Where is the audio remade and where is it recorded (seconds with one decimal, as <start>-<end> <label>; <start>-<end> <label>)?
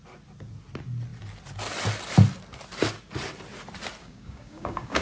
0.0-4.0 recorded; 4.0-5.0 remade